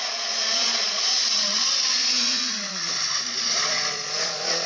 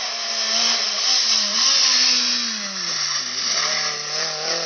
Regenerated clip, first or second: first